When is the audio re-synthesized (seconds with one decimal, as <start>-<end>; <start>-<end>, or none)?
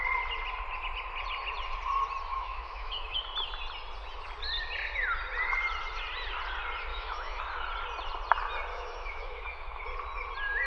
2.3-3.2; 6.9-7.4; 8.7-9.8